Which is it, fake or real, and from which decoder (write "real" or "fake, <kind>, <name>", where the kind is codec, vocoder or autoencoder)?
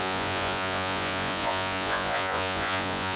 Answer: fake, vocoder, Vocos